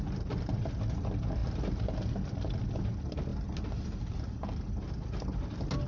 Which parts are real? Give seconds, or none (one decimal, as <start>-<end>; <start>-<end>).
0.0-5.9